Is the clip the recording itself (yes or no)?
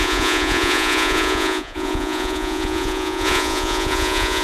no